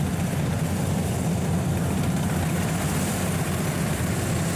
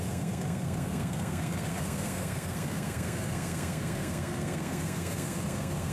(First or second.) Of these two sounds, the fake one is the second